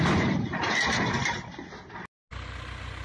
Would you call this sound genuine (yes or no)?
yes